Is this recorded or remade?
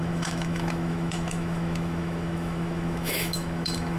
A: remade